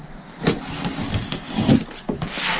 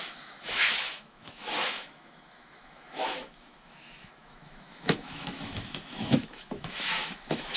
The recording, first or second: first